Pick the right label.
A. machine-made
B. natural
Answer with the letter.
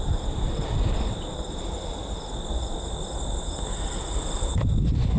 B